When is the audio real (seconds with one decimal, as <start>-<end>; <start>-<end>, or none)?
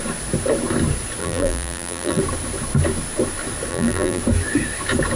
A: 0.0-1.2; 2.2-3.7; 4.2-5.2